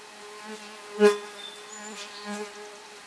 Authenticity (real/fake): real